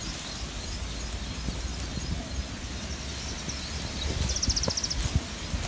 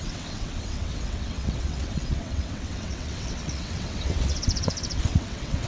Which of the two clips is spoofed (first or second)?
second